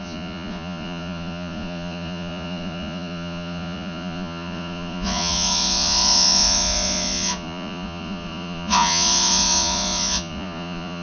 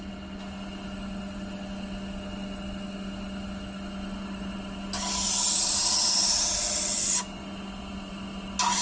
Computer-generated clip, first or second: first